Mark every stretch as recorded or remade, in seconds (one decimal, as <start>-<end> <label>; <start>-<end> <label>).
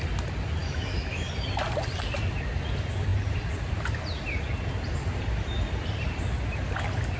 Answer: 0.0-0.6 recorded; 0.6-1.3 remade; 1.3-7.2 recorded